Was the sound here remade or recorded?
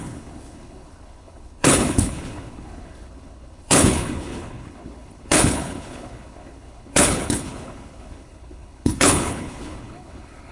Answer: remade